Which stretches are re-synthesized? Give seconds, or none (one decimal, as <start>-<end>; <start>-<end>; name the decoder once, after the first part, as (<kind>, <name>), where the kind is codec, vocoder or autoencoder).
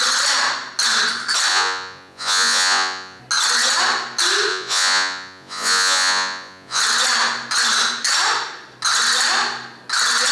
1.5-3.2 (vocoder, Vocos); 4.5-6.8